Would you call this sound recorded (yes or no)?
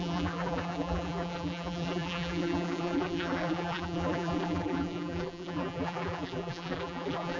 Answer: no